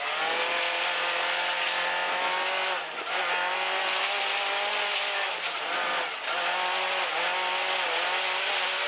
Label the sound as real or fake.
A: real